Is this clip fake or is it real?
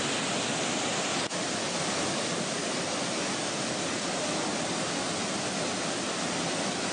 real